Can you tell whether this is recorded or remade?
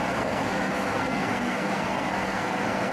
remade